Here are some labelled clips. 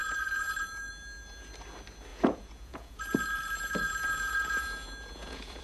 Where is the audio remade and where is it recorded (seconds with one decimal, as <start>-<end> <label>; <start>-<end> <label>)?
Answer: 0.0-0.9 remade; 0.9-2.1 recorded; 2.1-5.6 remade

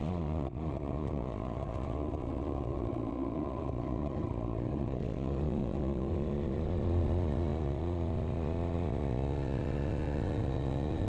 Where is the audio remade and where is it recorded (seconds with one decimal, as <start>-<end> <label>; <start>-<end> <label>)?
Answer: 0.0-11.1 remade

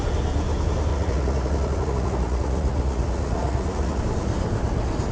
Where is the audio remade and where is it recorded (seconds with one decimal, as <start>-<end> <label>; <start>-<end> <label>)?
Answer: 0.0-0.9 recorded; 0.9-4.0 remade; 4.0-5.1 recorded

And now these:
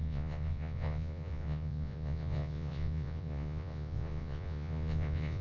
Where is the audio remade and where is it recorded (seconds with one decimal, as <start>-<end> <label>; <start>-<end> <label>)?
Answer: 0.0-5.4 remade

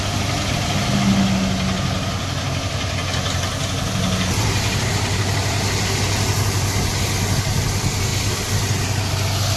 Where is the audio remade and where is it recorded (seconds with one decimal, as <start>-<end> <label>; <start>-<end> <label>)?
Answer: 0.0-9.6 recorded